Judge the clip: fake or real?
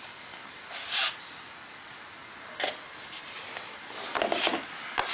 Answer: real